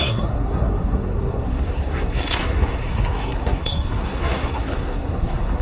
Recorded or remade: remade